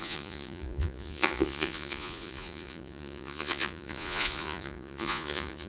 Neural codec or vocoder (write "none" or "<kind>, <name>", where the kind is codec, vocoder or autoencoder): vocoder, Vocos